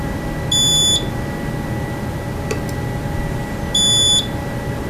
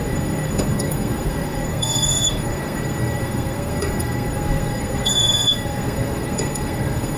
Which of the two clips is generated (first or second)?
second